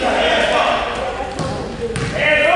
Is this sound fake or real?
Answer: real